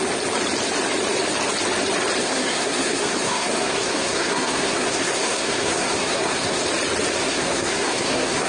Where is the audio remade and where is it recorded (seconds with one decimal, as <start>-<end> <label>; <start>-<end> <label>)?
0.0-2.2 recorded; 2.2-6.6 remade; 6.6-7.1 recorded; 7.1-8.5 remade